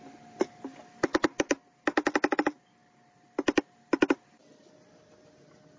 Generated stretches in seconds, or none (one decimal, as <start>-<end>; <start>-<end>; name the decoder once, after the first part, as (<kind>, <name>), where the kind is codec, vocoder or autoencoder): none